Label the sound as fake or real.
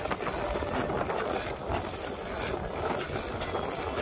real